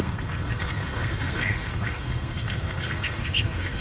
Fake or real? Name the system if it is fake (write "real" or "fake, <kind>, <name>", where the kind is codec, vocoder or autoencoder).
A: fake, codec, SNAC